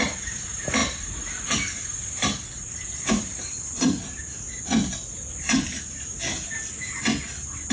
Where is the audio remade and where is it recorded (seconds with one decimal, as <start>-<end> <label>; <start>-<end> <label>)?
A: 0.0-7.7 recorded